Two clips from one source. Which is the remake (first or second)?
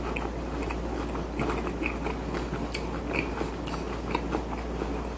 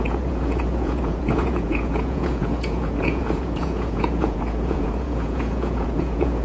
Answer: second